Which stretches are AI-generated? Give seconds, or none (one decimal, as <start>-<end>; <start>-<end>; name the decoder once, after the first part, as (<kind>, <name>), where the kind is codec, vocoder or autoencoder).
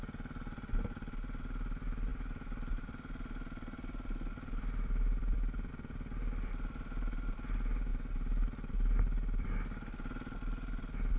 2.1-5.7 (vocoder, BigVGAN v2)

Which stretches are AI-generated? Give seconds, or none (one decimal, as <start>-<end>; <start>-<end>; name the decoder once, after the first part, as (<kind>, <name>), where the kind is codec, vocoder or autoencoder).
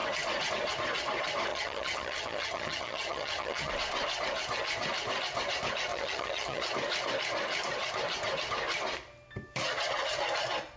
1.5-3.7 (vocoder, HiFi-GAN); 5.9-6.6